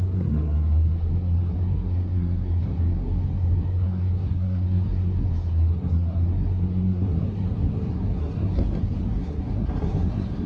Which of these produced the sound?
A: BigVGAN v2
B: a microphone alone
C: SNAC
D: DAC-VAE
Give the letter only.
C